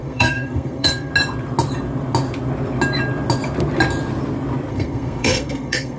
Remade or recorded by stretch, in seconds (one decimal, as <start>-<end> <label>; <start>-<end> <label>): 0.0-1.1 remade; 1.1-4.7 recorded; 4.7-6.0 remade